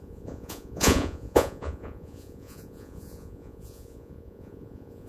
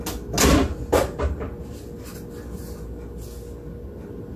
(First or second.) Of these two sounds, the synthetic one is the first